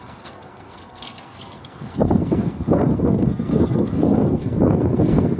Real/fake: fake